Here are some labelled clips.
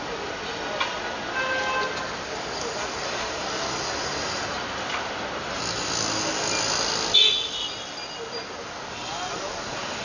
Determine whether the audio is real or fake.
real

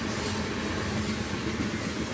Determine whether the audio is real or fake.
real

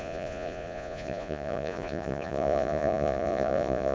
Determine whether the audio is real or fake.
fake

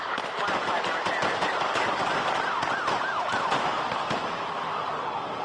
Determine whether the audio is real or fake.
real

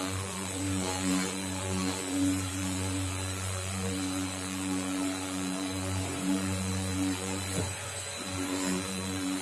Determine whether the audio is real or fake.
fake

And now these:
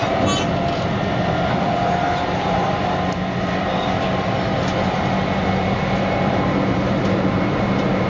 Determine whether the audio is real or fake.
real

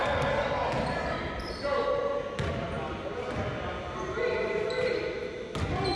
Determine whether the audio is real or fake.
real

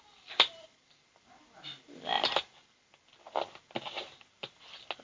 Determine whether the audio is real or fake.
real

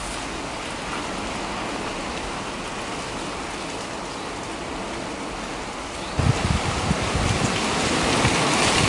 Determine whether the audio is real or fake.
real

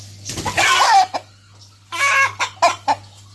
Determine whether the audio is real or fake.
real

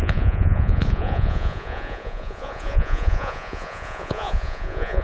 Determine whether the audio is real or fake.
fake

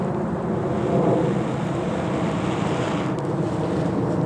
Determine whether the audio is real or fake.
real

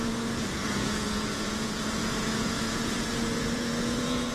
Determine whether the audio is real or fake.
fake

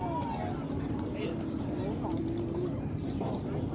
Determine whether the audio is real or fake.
real